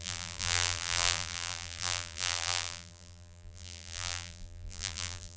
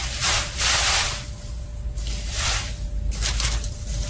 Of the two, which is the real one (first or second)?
second